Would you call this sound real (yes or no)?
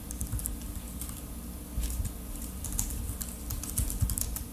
yes